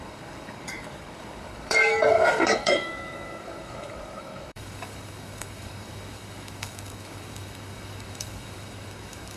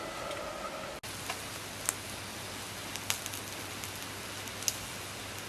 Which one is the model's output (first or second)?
first